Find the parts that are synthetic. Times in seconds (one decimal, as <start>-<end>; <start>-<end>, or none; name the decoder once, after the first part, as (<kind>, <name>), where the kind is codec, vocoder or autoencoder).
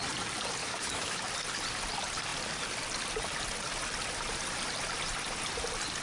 0.6-1.3 (autoencoder, DAC-VAE)